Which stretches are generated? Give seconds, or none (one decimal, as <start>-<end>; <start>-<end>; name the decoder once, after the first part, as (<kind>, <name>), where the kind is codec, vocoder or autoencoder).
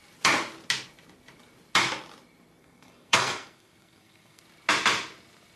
2.6-4.4 (codec, SNAC)